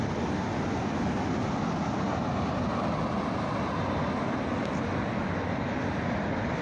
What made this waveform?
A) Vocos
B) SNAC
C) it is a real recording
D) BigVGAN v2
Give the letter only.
C